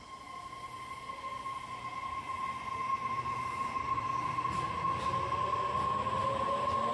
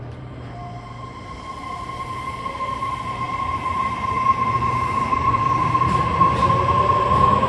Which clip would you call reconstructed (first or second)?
second